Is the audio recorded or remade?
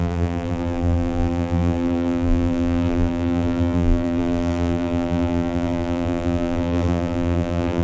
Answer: remade